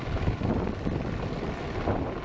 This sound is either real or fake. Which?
fake